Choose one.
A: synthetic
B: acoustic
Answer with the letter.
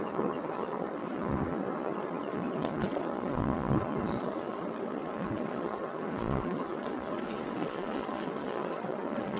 A